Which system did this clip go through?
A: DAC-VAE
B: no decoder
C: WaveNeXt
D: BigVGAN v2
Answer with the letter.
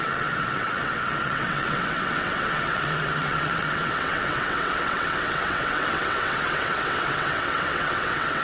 C